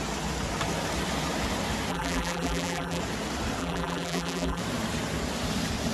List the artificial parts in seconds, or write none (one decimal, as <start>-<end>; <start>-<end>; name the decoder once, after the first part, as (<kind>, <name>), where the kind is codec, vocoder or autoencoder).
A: 1.9-3.0 (vocoder, BigVGAN v2); 3.6-4.6